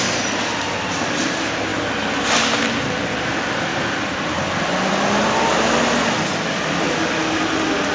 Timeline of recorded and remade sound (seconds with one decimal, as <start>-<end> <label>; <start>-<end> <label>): 0.0-7.9 recorded

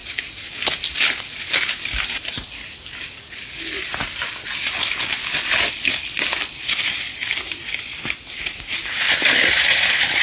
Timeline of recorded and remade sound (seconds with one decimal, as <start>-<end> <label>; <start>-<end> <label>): 0.0-10.2 recorded